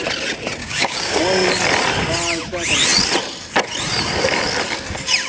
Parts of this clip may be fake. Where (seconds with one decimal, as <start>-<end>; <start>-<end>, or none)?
0.6-1.2